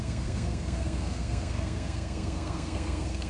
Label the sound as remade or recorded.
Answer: remade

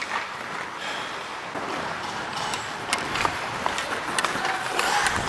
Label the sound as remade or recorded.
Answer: remade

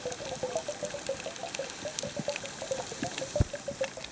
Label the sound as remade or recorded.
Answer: recorded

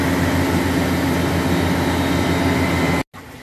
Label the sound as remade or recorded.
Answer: recorded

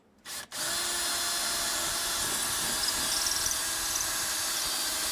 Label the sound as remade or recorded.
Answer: recorded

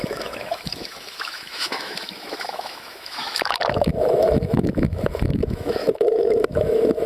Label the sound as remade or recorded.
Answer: remade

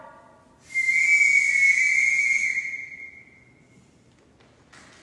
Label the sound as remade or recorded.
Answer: recorded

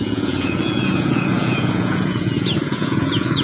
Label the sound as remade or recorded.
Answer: remade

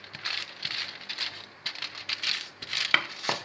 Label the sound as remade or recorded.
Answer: recorded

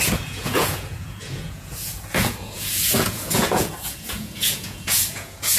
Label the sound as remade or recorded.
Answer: remade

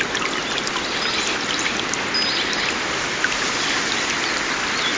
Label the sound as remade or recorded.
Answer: recorded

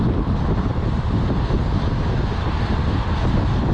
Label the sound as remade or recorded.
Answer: recorded